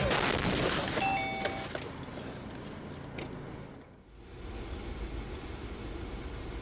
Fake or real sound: real